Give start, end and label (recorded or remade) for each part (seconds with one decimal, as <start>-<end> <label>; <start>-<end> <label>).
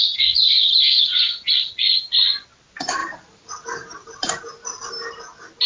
0.0-3.0 recorded; 3.0-4.3 remade; 4.3-5.7 recorded